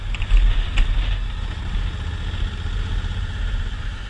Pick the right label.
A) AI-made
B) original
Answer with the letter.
B